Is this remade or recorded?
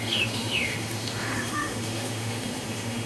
remade